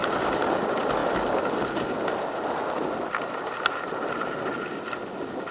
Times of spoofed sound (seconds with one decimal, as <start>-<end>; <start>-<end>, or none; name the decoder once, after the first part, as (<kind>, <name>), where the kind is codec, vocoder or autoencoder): none